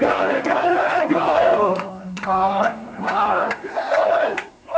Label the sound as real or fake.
fake